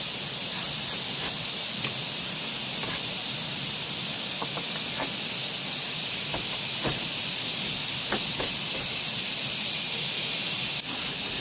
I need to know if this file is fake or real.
real